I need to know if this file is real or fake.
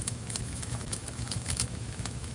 fake